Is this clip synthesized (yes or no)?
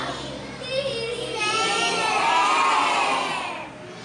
no